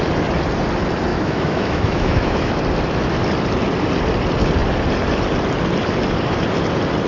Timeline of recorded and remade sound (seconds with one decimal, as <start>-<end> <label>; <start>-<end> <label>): 0.0-1.1 recorded; 1.1-2.6 remade; 2.6-7.1 recorded